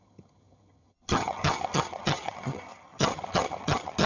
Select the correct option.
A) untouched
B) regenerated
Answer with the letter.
B